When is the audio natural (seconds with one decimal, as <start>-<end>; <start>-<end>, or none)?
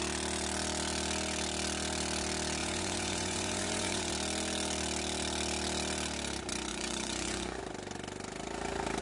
0.0-2.6; 4.1-6.7; 7.6-9.0